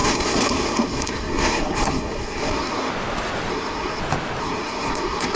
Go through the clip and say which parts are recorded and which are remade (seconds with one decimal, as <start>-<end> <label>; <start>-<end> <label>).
0.0-2.9 remade; 2.9-3.5 recorded; 3.5-4.0 remade; 4.0-4.4 recorded; 4.4-5.4 remade